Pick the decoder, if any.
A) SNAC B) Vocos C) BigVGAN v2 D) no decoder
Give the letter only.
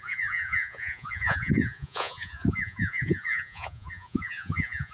B